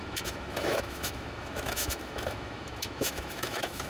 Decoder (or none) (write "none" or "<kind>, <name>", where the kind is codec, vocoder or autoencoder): autoencoder, DAC-VAE